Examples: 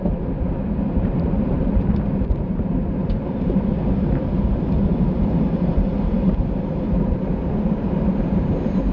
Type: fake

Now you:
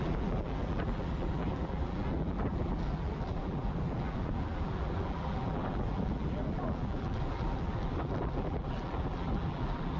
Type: fake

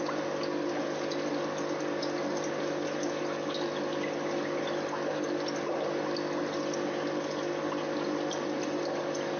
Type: real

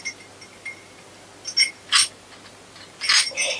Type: real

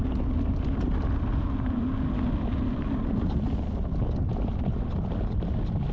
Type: real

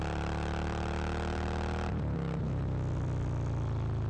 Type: real